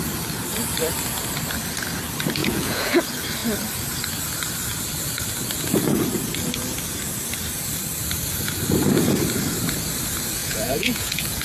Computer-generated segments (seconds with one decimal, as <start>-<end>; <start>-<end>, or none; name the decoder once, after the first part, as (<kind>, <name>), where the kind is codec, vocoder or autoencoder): 2.4-3.0 (vocoder, Vocos); 10.4-11.4